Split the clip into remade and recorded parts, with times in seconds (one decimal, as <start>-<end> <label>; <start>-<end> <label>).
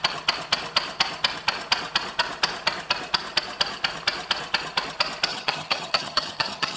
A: 0.0-5.3 recorded; 5.3-6.8 remade